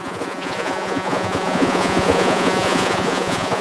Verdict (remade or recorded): remade